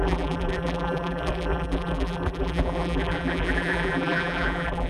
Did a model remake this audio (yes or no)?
yes